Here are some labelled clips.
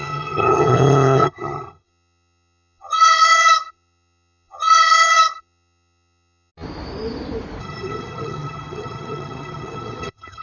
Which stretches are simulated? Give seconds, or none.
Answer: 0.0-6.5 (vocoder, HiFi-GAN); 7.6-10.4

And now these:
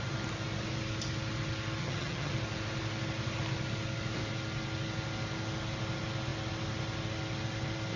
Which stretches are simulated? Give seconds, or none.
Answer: 1.8-2.3 (vocoder, HiFi-GAN)

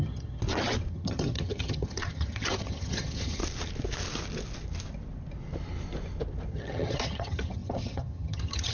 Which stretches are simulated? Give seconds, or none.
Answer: 0.0-0.4 (vocoder, HiFi-GAN); 0.9-3.4; 6.5-8.7